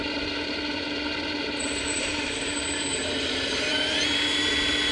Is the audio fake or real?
fake